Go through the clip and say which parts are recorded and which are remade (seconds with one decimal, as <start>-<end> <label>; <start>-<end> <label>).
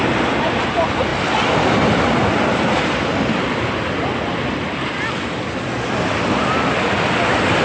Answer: 0.0-7.6 recorded